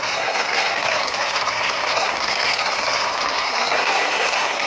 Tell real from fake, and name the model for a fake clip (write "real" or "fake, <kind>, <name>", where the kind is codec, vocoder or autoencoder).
fake, codec, SNAC